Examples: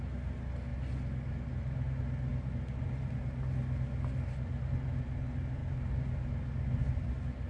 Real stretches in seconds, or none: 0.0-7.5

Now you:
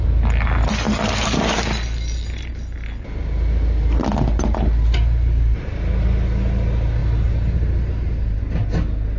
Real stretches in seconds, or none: 0.0-7.0; 8.4-9.2

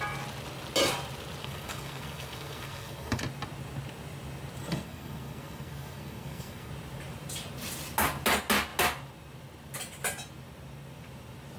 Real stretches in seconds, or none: 0.0-1.4; 3.2-4.6; 6.7-11.6

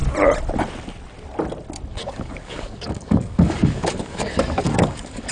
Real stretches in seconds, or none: 0.0-1.9